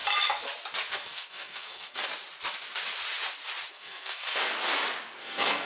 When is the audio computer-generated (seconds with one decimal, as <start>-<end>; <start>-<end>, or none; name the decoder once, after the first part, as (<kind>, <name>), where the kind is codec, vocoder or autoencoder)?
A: 0.9-2.0 (codec, SNAC); 3.7-4.5; 5.2-5.7